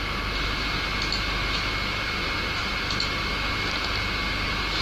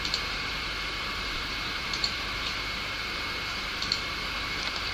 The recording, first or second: first